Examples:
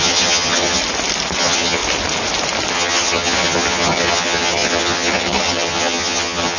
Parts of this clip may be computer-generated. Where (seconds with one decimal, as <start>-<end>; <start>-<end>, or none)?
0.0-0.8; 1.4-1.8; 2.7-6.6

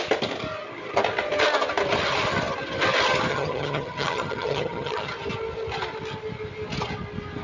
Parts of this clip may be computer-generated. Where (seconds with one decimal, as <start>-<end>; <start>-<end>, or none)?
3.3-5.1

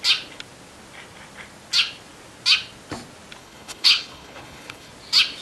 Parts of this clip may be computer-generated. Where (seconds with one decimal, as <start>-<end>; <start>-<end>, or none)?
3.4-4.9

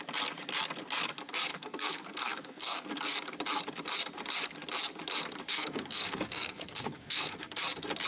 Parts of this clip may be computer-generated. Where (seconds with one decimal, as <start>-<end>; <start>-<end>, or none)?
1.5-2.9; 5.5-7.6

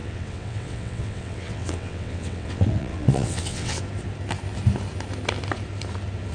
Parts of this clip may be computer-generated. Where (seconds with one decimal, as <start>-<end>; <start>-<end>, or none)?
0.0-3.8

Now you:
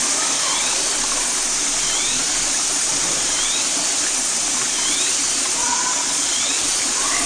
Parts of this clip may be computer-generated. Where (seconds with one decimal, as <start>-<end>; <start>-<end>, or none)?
5.6-6.8

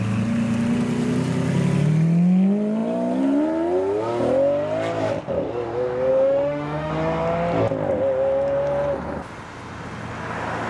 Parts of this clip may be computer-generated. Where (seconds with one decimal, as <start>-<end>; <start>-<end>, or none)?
6.1-6.9